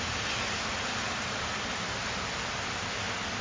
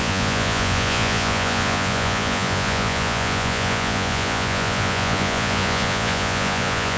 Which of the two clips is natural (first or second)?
first